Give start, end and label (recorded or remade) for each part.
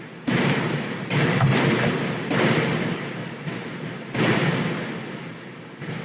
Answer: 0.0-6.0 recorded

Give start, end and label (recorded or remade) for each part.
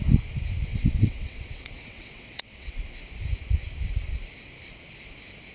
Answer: 0.0-0.7 recorded; 0.7-2.8 remade; 2.8-5.5 recorded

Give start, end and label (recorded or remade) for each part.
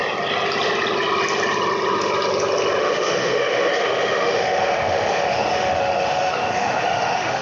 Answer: 0.0-2.8 recorded; 2.8-7.4 remade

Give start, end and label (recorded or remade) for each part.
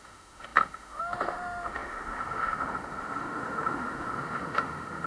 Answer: 0.0-5.1 remade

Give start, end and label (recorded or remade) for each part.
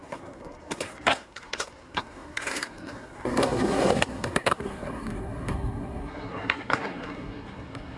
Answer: 0.0-8.0 remade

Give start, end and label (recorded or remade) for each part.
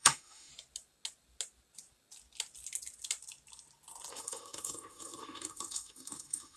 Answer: 0.0-0.5 remade; 0.5-4.1 recorded; 4.1-6.6 remade